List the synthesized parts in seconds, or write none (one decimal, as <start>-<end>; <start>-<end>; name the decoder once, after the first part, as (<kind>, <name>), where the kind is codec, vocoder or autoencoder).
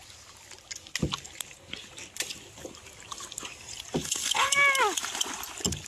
4.0-4.5 (codec, HILCodec)